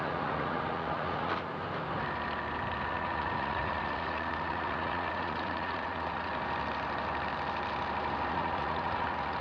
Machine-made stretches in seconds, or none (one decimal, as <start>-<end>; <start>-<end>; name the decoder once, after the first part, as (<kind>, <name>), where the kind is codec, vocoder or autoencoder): 0.0-1.5 (vocoder, Vocos); 2.9-6.3; 8.3-9.4